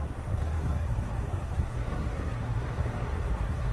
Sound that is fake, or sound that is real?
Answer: fake